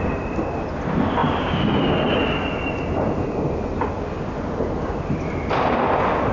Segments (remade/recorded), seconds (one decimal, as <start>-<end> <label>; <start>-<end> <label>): 0.0-6.3 recorded